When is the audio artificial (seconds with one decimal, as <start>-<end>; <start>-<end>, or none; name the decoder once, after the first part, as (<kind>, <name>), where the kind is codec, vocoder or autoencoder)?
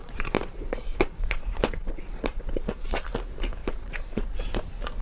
0.0-3.0 (vocoder, Vocos); 3.6-4.4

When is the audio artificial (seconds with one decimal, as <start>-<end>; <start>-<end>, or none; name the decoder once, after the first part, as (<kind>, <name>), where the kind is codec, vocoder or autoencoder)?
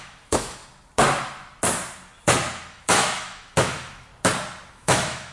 0.0-0.6 (autoencoder, DAC-VAE); 2.7-4.1; 4.7-5.3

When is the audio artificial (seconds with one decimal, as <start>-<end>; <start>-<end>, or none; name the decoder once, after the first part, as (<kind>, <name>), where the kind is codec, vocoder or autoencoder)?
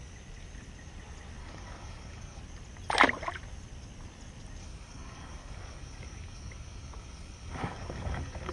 1.4-2.4 (codec, DAC); 4.6-8.5